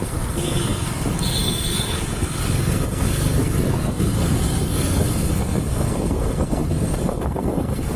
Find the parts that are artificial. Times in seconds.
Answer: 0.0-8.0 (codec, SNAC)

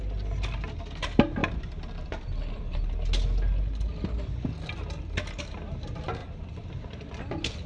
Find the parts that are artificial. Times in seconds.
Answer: 1.4-2.6 (vocoder, BigVGAN v2); 6.2-7.1

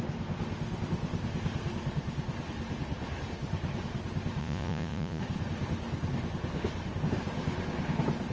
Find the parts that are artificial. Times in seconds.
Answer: 4.4-5.2 (vocoder, Vocos)

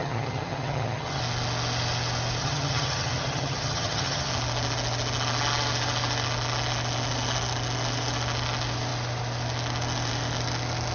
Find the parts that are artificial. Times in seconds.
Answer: 0.0-1.2 (vocoder, HiFi-GAN); 2.4-4.3

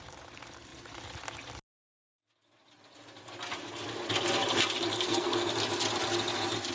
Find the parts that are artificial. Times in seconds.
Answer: 4.9-5.5 (codec, SNAC)

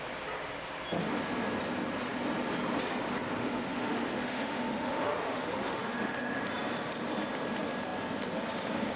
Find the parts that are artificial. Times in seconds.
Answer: 3.4-6.4 (autoencoder, DAC-VAE)